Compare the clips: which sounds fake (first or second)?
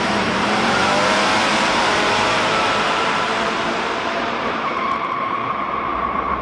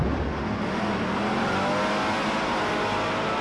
first